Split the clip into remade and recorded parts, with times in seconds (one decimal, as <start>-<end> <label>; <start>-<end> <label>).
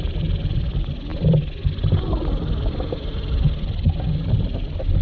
0.0-5.0 recorded